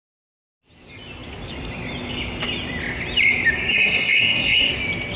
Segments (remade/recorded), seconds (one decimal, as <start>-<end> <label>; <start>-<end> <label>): 0.0-3.7 recorded; 3.7-4.7 remade; 4.7-5.2 recorded

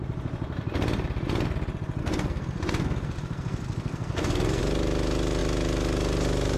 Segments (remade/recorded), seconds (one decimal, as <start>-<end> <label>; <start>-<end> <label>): 0.0-2.0 recorded; 2.0-4.6 remade; 4.6-6.6 recorded

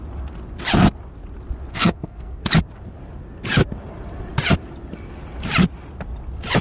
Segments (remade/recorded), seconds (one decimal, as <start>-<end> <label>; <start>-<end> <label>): 0.0-1.7 recorded; 1.7-2.4 remade; 2.4-6.6 recorded

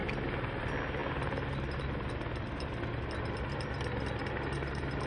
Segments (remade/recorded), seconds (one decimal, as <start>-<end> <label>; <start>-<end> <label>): 0.0-5.1 recorded

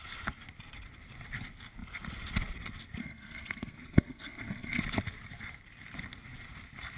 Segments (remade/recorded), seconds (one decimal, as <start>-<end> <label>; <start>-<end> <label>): 0.0-3.0 recorded; 3.0-4.8 remade; 4.8-7.0 recorded

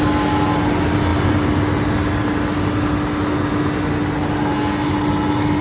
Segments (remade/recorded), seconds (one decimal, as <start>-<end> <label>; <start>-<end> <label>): 0.0-5.6 recorded